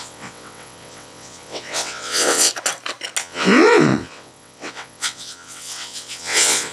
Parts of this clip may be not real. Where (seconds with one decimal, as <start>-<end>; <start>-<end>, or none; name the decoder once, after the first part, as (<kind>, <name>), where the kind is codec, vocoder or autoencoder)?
0.0-2.5 (vocoder, WaveNeXt); 3.2-6.7